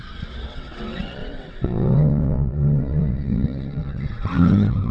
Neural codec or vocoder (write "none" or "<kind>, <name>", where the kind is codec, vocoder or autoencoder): vocoder, WaveNeXt